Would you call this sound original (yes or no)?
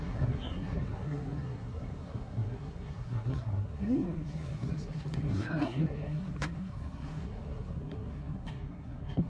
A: no